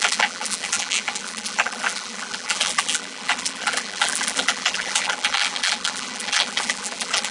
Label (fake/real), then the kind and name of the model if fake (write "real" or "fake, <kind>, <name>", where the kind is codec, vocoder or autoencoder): fake, vocoder, BigVGAN v2